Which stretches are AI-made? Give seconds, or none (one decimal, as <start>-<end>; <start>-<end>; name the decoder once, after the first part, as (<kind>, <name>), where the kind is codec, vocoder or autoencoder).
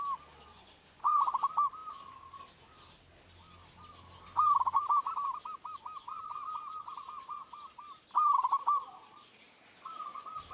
0.5-1.2 (vocoder, Vocos)